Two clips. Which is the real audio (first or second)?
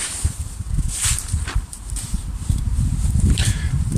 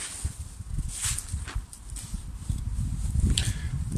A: second